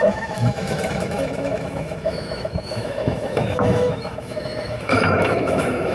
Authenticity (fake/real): fake